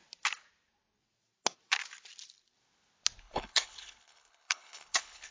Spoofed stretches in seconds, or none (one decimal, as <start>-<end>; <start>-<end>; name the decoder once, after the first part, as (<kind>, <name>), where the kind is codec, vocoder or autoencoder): 3.2-5.3 (codec, HILCodec)